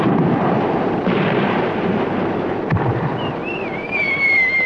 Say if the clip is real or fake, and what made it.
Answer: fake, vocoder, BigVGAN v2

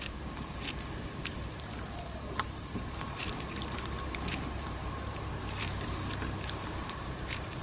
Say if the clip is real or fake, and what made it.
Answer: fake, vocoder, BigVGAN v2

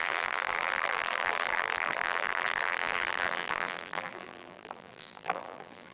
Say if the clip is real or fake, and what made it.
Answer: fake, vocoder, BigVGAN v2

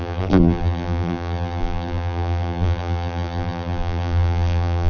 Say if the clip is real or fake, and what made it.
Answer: fake, vocoder, BigVGAN v2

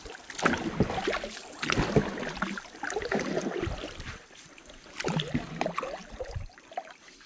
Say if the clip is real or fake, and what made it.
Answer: real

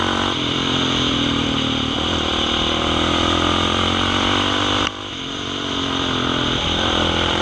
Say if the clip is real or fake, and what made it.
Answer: fake, vocoder, BigVGAN v2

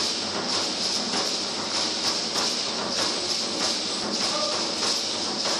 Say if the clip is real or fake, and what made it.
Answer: real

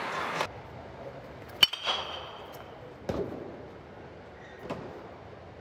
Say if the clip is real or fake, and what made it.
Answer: real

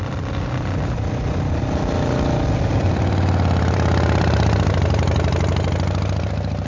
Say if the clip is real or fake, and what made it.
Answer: fake, vocoder, BigVGAN v2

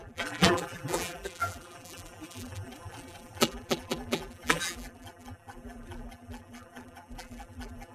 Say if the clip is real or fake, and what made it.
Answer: fake, vocoder, BigVGAN v2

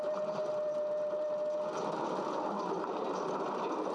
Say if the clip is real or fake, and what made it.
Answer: real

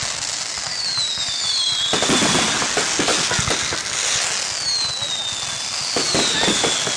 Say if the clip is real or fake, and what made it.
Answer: real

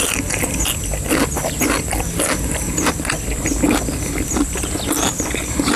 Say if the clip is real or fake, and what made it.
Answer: real